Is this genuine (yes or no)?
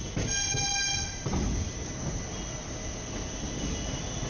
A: yes